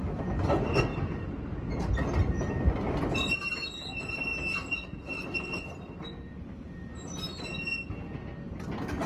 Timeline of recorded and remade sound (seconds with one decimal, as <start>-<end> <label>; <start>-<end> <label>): 0.0-0.9 recorded; 0.9-1.5 remade; 1.5-9.1 recorded